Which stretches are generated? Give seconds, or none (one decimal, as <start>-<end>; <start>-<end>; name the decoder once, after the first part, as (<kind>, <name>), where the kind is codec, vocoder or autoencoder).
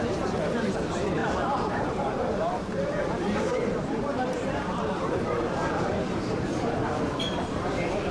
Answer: 0.0-8.1 (vocoder, BigVGAN v2)